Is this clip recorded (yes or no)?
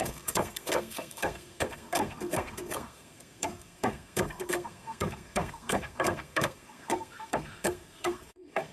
no